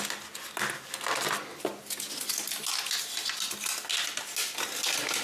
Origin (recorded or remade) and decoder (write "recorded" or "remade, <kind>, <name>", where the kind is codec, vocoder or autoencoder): recorded